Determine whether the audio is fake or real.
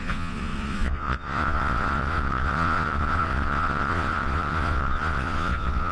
fake